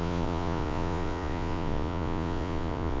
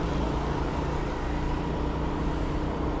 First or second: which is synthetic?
first